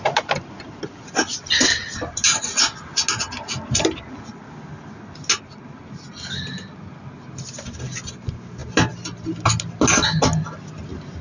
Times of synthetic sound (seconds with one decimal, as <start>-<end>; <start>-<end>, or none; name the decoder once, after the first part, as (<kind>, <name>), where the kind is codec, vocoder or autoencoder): none